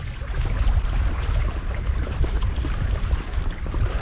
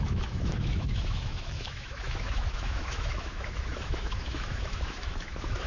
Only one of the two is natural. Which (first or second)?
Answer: first